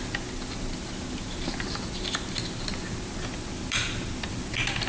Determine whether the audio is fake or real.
real